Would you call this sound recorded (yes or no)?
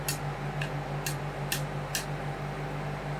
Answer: yes